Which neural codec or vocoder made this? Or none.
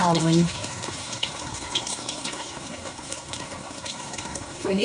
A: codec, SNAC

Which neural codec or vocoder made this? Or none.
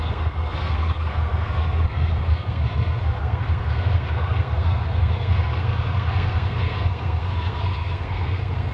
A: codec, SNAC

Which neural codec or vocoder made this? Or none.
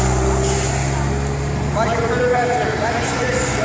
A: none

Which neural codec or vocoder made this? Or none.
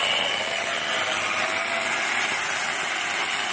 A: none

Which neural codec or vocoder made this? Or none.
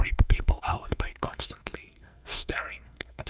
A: codec, SNAC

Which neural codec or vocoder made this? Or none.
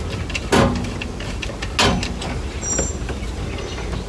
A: none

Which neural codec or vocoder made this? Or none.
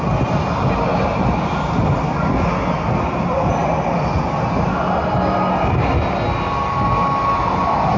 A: none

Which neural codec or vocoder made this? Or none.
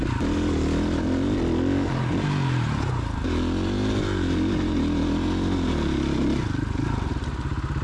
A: none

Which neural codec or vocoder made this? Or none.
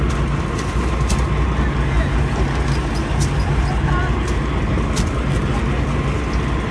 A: none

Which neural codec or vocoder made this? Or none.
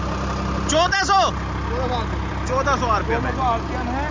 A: none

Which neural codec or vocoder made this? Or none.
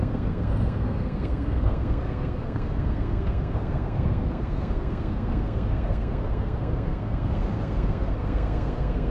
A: codec, SNAC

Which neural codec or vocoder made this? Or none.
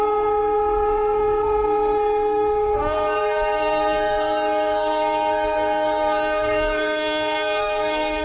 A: codec, SNAC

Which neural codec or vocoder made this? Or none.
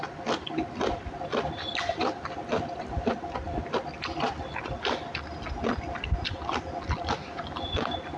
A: none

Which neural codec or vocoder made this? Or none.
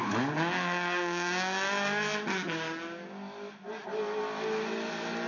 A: none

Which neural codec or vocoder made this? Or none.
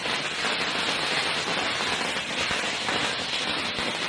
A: none